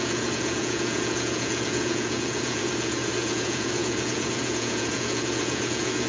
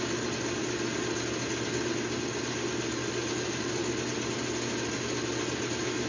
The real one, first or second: second